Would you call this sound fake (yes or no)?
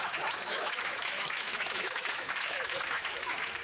yes